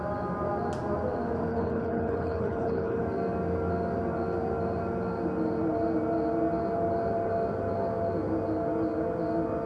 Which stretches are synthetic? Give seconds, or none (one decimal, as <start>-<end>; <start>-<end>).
1.5-3.0